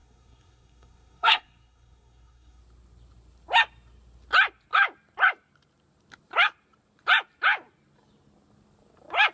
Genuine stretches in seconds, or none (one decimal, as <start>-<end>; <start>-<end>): 2.6-9.3